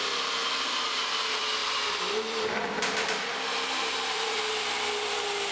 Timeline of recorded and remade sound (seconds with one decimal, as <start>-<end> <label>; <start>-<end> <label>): 0.0-5.5 remade